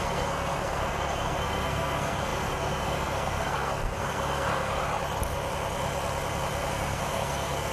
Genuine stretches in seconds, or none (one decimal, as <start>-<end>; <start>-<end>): 4.8-6.7